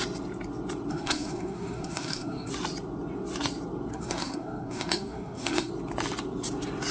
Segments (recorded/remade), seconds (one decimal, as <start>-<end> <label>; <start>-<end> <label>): 0.0-0.9 recorded; 0.9-2.5 remade; 2.5-3.9 recorded; 3.9-5.7 remade; 5.7-6.9 recorded